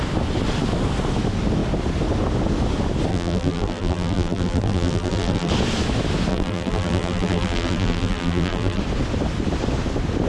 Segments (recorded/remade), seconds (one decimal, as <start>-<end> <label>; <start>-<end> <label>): 0.0-3.1 recorded; 3.1-5.5 remade; 5.5-6.3 recorded; 6.3-8.8 remade; 8.8-10.3 recorded